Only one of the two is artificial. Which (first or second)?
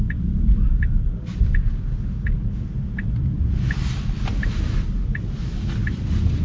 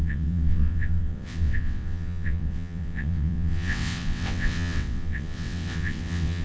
second